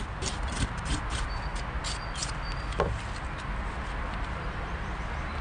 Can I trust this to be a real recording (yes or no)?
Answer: yes